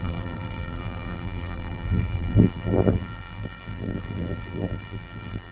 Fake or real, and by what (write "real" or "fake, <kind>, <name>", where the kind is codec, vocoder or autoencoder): fake, vocoder, BigVGAN v2